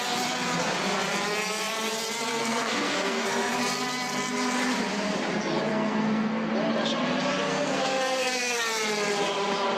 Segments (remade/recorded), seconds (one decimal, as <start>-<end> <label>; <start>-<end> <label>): 0.0-2.3 recorded; 2.3-3.6 remade; 3.6-5.7 recorded; 5.7-6.5 remade; 6.5-7.5 recorded; 7.5-8.6 remade; 8.6-9.8 recorded

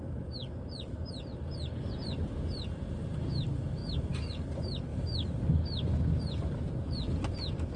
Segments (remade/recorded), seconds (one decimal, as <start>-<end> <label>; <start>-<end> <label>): 0.0-7.8 recorded

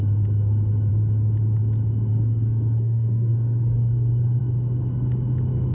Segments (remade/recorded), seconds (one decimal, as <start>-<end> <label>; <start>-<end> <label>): 0.0-2.1 recorded; 2.1-4.4 remade; 4.4-5.7 recorded

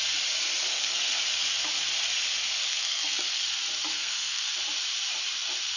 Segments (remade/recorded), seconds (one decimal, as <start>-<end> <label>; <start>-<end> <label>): 0.0-0.7 recorded; 0.7-1.2 remade; 1.2-2.7 recorded; 2.7-3.4 remade; 3.4-3.9 recorded; 3.9-4.5 remade; 4.5-5.8 recorded

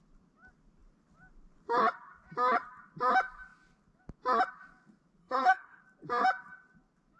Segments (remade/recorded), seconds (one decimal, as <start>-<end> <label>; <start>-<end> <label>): 0.0-5.2 recorded; 5.2-5.8 remade; 5.8-7.2 recorded

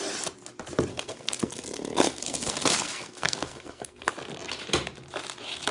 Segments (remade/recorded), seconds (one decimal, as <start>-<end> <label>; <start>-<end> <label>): 0.0-0.9 recorded; 0.9-4.1 remade; 4.1-5.7 recorded